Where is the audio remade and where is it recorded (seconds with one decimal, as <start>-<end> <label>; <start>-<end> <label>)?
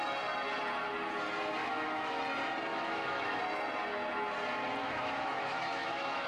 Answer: 0.0-1.6 recorded; 1.6-2.2 remade; 2.2-2.7 recorded; 2.7-3.4 remade; 3.4-4.8 recorded; 4.8-6.3 remade